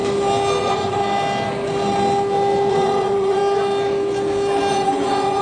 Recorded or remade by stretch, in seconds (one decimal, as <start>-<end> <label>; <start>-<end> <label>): 0.0-0.6 recorded; 0.6-1.0 remade; 1.0-2.7 recorded; 2.7-3.4 remade; 3.4-4.7 recorded; 4.7-5.4 remade